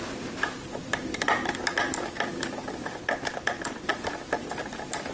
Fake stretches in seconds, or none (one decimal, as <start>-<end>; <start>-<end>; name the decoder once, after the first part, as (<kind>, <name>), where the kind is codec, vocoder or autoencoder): 0.0-1.6 (vocoder, BigVGAN v2); 3.2-3.9; 4.6-5.1